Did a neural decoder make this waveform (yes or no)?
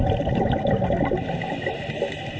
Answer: no